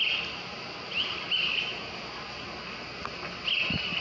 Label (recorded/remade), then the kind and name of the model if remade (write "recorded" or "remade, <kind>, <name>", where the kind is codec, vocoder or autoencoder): recorded